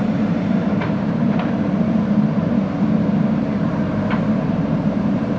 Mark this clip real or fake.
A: fake